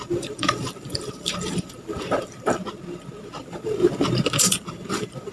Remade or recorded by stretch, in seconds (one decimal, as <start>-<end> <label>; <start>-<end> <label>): 0.0-2.6 remade; 2.6-3.4 recorded; 3.4-3.8 remade; 3.8-4.4 recorded; 4.4-5.3 remade